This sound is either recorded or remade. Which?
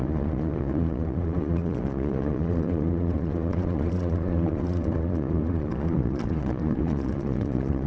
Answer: remade